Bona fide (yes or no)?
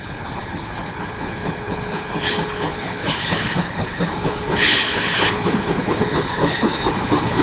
no